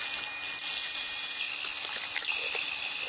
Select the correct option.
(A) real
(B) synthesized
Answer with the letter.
A